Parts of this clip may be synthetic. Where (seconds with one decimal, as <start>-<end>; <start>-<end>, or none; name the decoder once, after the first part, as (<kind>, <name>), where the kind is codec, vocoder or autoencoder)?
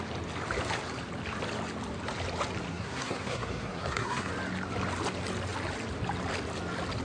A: 2.7-4.3 (codec, SNAC)